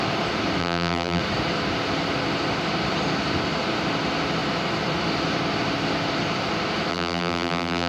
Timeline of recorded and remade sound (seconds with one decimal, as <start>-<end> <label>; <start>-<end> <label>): 0.0-0.6 recorded; 0.6-1.2 remade; 1.2-6.9 recorded; 6.9-7.9 remade